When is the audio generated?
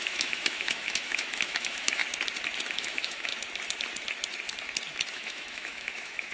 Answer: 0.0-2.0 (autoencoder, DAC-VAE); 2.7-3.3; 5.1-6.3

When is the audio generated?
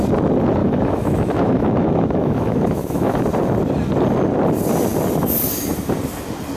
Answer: 0.6-3.2 (autoencoder, DAC-VAE)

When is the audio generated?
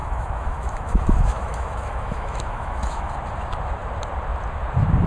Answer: 0.0-3.1 (autoencoder, DAC-VAE)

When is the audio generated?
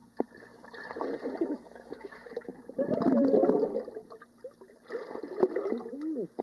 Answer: 1.4-2.5 (autoencoder, DAC-VAE)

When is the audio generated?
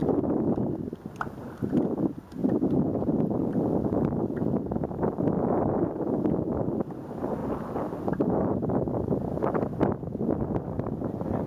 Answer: none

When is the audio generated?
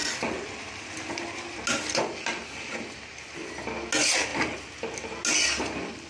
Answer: none